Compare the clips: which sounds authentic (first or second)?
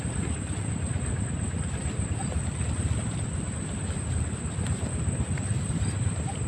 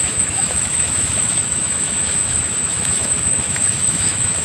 first